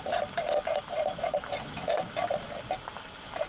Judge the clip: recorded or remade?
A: recorded